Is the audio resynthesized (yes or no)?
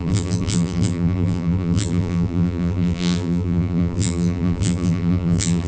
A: yes